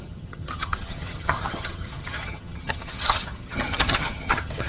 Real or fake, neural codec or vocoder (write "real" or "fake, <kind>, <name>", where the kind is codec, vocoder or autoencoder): fake, vocoder, HiFi-GAN